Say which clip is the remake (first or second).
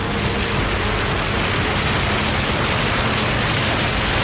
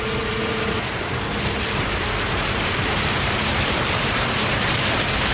second